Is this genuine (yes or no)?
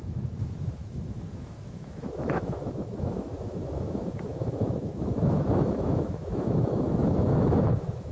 no